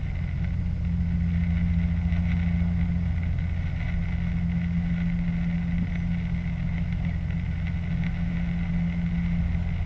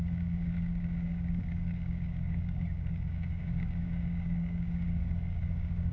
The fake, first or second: second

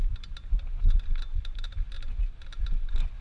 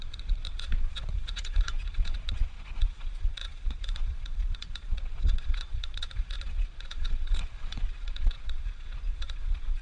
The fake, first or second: second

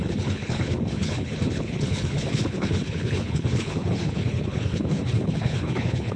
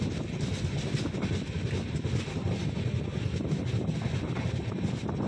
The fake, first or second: first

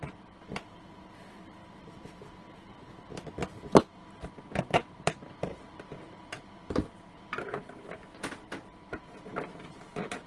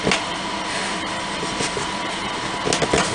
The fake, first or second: first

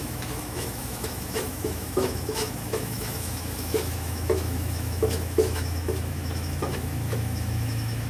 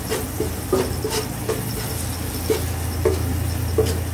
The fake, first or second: first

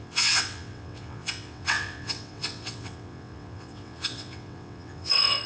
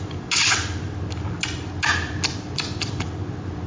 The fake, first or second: first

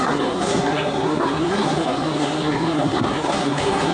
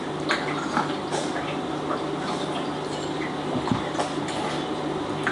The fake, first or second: first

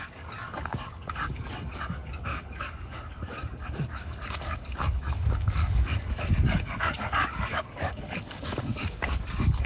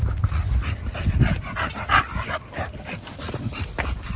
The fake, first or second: first